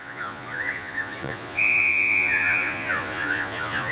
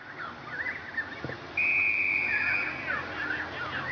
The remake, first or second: first